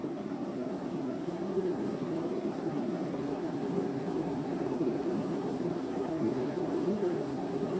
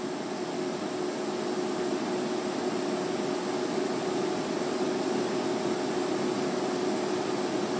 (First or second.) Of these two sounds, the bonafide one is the second